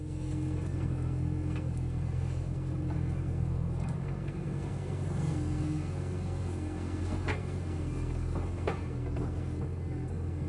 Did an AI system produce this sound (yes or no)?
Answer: yes